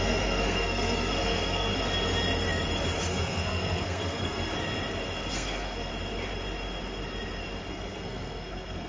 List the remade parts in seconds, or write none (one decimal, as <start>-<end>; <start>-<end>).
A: 0.0-1.7; 3.1-4.5; 5.3-5.9; 7.7-8.9

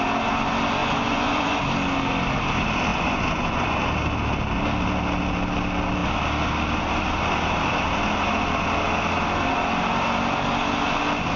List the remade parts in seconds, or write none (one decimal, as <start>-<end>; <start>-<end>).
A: 0.8-1.6; 2.9-3.8